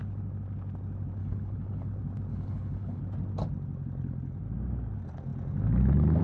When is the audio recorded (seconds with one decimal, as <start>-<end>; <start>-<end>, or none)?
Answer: 0.0-1.2; 1.9-2.3; 3.0-6.2